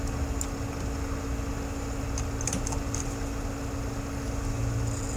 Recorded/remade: recorded